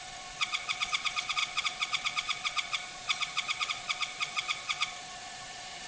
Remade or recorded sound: remade